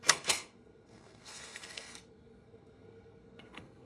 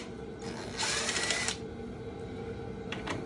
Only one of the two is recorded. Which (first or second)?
second